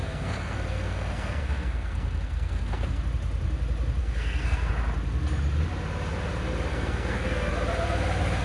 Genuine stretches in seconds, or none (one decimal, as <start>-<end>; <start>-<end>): 3.0-4.0; 4.7-6.7; 7.5-8.4